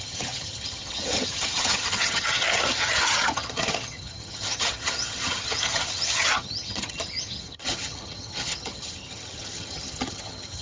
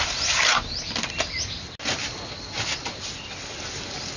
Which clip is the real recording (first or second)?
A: second